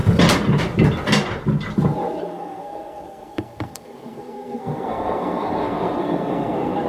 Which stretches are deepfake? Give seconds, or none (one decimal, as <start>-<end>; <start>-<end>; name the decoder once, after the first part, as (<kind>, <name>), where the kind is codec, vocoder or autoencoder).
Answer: 2.2-6.9 (codec, SNAC)